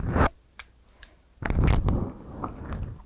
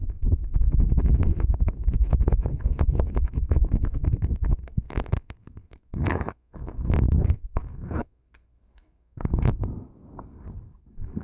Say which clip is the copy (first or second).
second